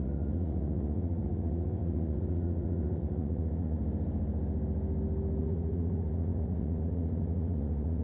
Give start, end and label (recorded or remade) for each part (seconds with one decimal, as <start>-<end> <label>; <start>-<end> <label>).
0.0-3.8 remade; 3.8-5.4 recorded; 5.4-8.0 remade